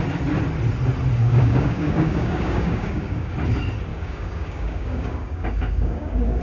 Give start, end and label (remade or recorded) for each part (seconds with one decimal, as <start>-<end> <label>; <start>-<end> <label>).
0.0-1.2 recorded; 1.2-3.3 remade; 3.3-3.9 recorded; 3.9-6.4 remade